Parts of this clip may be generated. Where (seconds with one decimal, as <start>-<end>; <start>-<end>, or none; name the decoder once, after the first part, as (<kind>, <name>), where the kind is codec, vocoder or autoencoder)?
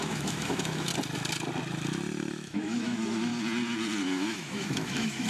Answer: 0.0-0.9 (autoencoder, DAC-VAE); 2.3-3.3; 4.0-5.3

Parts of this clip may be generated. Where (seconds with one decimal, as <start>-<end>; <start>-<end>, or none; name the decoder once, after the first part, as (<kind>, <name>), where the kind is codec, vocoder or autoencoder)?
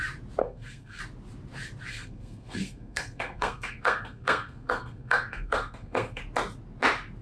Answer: 0.4-1.0 (codec, SNAC); 1.9-6.2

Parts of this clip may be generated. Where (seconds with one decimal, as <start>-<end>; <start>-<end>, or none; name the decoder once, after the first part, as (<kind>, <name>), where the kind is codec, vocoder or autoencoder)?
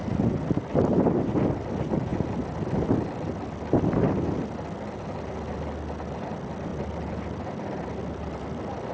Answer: 0.0-2.1 (vocoder, BigVGAN v2); 6.2-6.7; 7.4-8.9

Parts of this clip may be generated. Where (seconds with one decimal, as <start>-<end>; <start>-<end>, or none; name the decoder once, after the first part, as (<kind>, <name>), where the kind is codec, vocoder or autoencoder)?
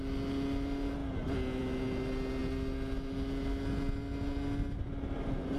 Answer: none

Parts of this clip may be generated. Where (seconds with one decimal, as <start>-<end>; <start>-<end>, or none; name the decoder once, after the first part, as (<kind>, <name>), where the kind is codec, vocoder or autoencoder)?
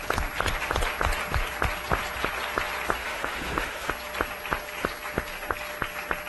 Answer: 3.0-3.9 (autoencoder, DAC-VAE)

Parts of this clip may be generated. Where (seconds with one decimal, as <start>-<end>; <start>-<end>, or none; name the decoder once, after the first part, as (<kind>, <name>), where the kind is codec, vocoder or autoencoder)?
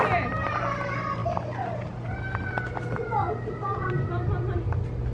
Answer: none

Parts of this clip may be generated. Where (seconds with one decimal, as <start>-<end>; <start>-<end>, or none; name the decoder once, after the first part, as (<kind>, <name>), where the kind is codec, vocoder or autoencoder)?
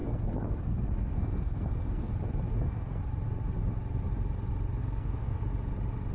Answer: 0.0-2.1 (codec, SNAC); 2.5-3.0; 4.8-5.4